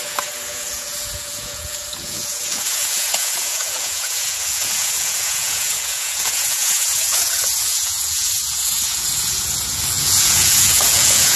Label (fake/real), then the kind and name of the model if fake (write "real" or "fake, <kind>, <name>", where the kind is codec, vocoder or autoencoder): fake, vocoder, Vocos